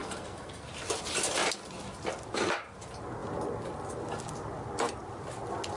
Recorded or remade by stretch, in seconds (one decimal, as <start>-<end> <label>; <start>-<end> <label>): 0.0-0.7 remade; 0.7-5.8 recorded